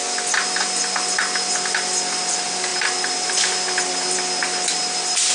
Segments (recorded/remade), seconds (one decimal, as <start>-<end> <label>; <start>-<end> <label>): 0.0-5.3 recorded